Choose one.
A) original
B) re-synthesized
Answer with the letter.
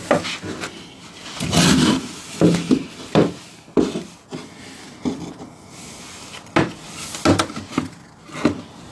A